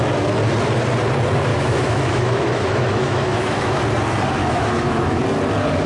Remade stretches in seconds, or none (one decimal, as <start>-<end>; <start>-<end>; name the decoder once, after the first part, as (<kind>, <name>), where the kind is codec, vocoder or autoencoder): 1.5-3.8 (autoencoder, DAC-VAE); 4.4-5.2